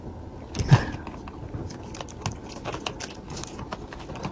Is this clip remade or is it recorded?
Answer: recorded